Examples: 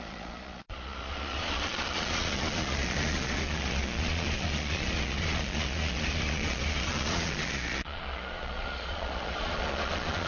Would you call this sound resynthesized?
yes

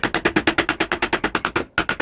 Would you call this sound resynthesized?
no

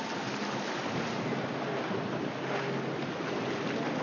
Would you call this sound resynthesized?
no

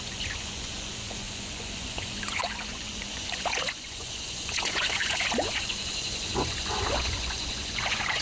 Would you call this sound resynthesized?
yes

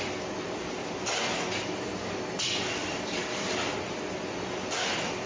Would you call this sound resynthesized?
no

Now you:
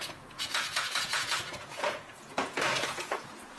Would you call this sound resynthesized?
yes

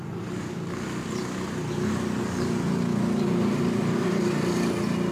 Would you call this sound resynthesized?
no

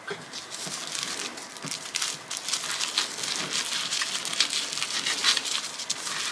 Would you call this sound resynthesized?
no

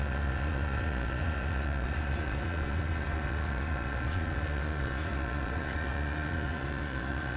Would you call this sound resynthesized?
yes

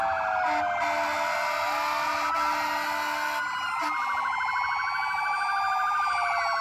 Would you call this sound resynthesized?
no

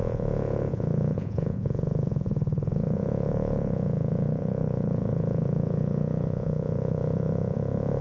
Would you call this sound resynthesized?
yes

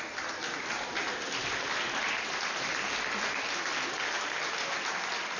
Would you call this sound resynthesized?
no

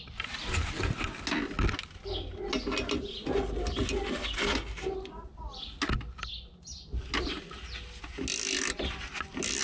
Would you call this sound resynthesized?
no